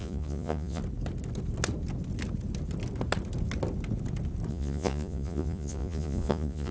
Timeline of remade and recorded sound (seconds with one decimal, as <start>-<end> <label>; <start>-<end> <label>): 0.0-0.8 remade; 0.8-4.5 recorded; 4.5-6.7 remade